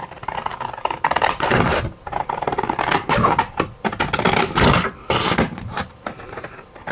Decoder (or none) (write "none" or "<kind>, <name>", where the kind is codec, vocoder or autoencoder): none